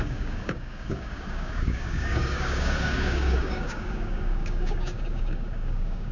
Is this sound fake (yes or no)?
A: yes